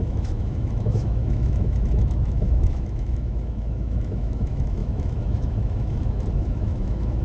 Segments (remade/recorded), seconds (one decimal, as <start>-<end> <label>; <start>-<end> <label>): 0.0-7.2 remade